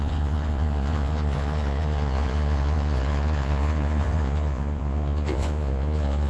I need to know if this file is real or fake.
fake